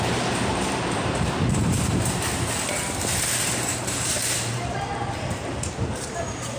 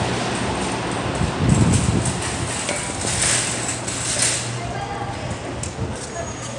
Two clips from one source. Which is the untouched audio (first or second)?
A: second